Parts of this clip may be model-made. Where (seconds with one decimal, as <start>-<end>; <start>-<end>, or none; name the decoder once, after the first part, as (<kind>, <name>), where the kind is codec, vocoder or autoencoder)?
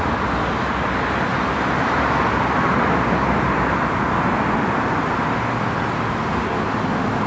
none